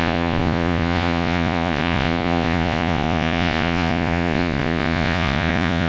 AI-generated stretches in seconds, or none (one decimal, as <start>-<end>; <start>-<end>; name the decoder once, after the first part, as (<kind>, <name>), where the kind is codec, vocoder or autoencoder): 0.0-5.9 (vocoder, Vocos)